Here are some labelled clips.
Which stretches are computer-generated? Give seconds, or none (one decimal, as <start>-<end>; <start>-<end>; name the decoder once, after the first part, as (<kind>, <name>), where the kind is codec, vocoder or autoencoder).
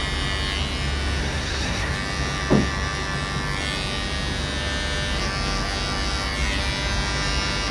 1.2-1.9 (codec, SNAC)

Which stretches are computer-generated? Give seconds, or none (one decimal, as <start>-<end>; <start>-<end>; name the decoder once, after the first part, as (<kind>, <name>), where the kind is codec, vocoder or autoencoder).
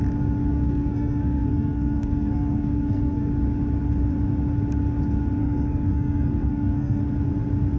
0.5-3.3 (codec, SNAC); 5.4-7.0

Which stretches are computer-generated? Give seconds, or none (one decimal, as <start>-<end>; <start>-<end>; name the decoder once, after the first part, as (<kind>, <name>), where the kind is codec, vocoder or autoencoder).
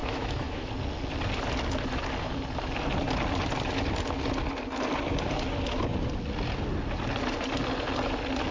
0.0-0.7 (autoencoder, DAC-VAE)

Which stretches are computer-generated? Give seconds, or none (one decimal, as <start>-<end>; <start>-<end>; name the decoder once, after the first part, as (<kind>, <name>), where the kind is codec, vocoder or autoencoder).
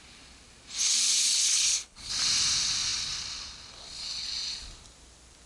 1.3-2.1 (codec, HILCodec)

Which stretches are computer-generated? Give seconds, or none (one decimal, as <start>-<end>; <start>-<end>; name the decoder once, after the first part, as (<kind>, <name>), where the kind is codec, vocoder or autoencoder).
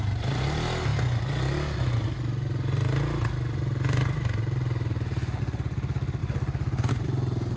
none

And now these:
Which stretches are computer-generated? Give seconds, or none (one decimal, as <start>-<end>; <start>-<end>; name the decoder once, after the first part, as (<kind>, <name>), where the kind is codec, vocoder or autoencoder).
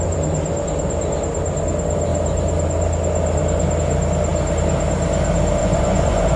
5.6-6.4 (vocoder, Vocos)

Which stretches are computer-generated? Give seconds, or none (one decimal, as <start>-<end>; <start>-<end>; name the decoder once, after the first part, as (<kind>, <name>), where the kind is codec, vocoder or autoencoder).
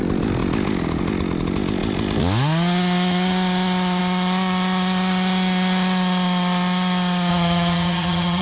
7.3-8.4 (vocoder, HiFi-GAN)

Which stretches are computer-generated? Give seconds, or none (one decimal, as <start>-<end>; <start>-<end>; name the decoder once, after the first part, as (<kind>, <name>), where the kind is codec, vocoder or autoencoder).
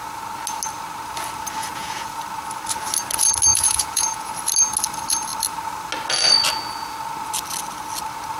1.6-2.2 (vocoder, Vocos); 3.5-4.3